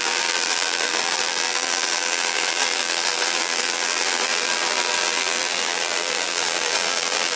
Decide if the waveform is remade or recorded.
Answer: remade